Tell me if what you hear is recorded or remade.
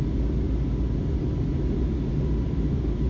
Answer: recorded